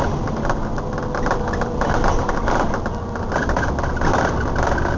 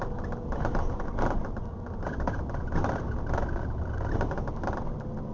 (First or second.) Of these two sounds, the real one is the first